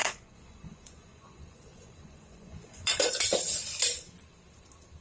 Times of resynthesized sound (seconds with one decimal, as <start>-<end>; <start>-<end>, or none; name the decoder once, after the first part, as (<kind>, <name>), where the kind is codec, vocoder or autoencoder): 0.0-3.0 (vocoder, Vocos)